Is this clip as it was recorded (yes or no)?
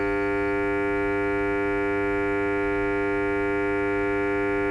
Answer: yes